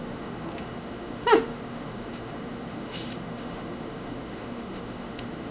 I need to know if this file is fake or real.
fake